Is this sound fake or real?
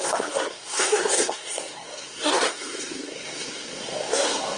fake